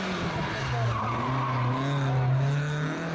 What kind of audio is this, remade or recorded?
recorded